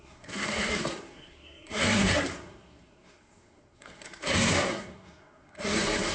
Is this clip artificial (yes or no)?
yes